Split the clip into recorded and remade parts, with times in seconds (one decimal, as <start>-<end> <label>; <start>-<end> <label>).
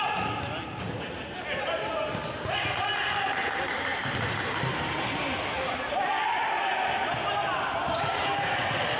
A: 0.0-9.0 recorded